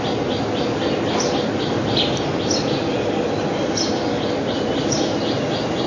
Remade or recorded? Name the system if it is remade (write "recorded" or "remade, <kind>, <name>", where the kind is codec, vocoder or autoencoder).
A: recorded